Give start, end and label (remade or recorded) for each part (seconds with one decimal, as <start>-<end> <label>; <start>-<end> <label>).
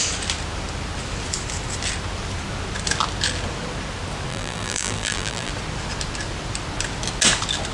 0.0-4.3 recorded; 4.3-5.5 remade; 5.5-7.7 recorded